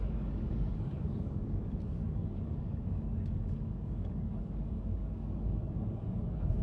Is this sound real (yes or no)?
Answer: no